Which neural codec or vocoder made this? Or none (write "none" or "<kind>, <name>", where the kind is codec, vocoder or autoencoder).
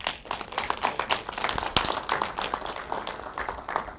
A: none